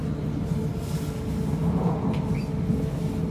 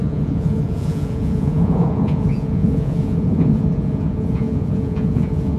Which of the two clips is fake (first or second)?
second